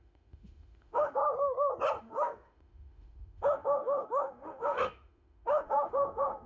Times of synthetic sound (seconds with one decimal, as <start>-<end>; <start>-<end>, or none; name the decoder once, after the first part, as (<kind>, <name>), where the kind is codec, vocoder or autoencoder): 0.0-1.2 (autoencoder, DAC-VAE); 2.0-6.5